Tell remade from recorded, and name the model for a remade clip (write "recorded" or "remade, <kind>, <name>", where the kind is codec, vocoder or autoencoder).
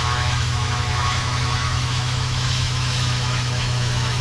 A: remade, autoencoder, DAC-VAE